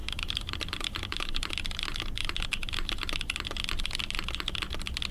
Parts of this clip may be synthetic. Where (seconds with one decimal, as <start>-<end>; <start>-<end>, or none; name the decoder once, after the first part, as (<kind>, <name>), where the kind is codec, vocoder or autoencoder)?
0.0-1.5 (vocoder, BigVGAN v2)

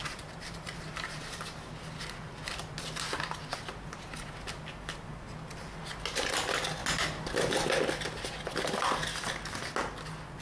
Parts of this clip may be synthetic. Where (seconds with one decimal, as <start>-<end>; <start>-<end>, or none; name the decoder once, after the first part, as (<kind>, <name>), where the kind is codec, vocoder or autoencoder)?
0.0-1.4 (vocoder, BigVGAN v2)

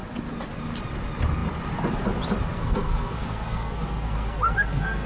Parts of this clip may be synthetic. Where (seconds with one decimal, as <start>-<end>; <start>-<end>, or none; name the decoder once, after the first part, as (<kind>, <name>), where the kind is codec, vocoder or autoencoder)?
2.5-5.1 (codec, SNAC)